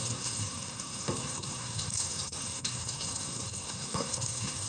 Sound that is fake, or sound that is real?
fake